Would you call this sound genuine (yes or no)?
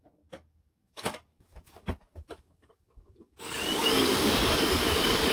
no